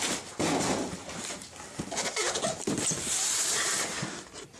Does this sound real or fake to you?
fake